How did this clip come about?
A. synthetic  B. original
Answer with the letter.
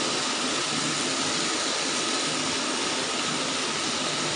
B